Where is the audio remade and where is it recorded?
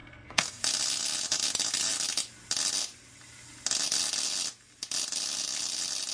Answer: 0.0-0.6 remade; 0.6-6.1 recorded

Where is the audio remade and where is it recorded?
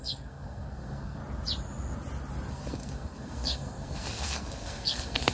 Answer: 0.0-1.2 remade; 1.2-2.5 recorded; 2.5-5.3 remade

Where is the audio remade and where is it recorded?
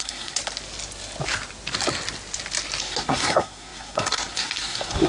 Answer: 0.0-0.4 remade; 0.4-2.8 recorded; 2.8-5.1 remade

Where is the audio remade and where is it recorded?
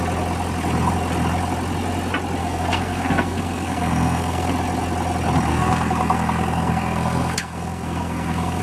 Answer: 0.0-2.4 recorded; 2.4-4.5 remade; 4.5-5.5 recorded; 5.5-8.6 remade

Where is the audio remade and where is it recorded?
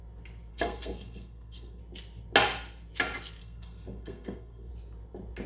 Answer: 0.0-0.5 recorded; 0.5-1.8 remade; 1.8-3.4 recorded; 3.4-4.7 remade; 4.7-5.5 recorded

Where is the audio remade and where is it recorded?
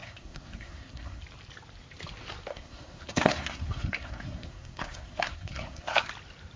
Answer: 0.0-1.2 remade; 1.2-2.5 recorded; 2.5-6.1 remade; 6.1-6.6 recorded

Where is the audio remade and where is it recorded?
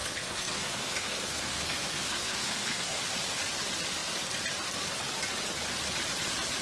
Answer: 0.0-3.0 remade; 3.0-6.6 recorded